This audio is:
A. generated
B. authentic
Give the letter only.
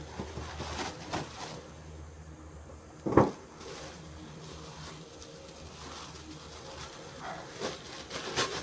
B